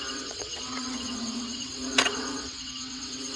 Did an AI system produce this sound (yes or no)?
yes